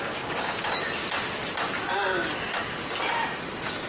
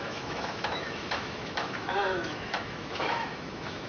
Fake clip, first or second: second